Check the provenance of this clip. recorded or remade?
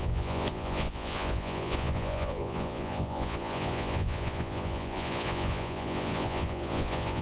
remade